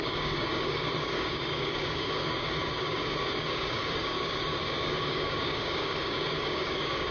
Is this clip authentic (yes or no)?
no